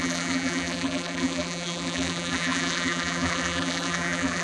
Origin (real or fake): fake